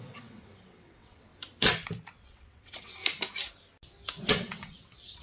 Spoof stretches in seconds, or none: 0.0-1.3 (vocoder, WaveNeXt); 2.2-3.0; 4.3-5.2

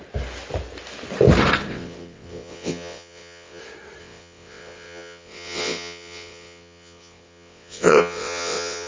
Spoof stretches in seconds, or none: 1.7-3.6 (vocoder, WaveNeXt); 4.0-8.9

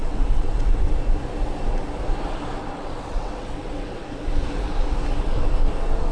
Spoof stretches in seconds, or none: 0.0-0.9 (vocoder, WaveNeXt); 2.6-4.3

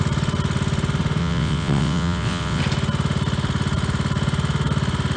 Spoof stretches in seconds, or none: 1.2-2.6 (vocoder, WaveNeXt)

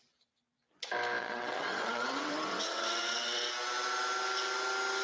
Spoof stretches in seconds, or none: 1.2-3.5 (vocoder, WaveNeXt)

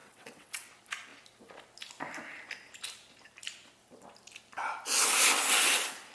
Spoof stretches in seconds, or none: 0.0-0.7 (vocoder, WaveNeXt)

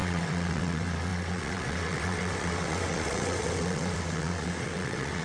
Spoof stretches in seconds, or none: 0.0-5.2 (vocoder, WaveNeXt)

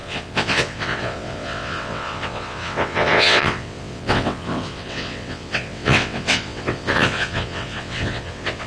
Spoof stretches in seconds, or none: 0.0-8.7 (vocoder, WaveNeXt)